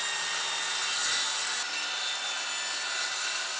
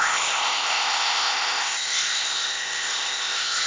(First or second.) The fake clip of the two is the second